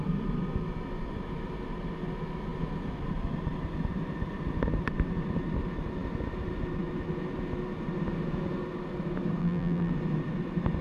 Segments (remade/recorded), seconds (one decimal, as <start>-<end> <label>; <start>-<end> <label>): 0.0-9.4 recorded; 9.4-9.9 remade; 9.9-10.8 recorded